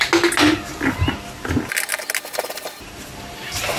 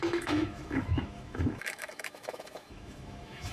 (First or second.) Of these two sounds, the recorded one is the first